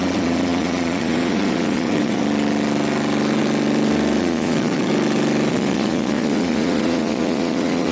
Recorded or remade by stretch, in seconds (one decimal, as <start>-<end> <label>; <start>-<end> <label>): 0.0-2.2 remade; 2.2-4.2 recorded; 4.2-4.9 remade; 4.9-5.5 recorded; 5.5-7.9 remade